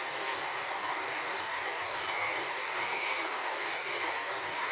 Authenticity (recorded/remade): remade